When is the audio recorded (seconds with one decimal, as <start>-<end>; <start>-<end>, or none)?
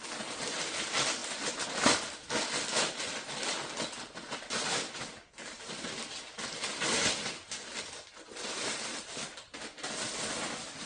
0.0-10.9